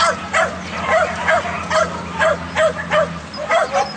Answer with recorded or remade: recorded